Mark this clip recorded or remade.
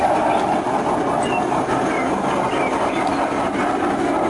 recorded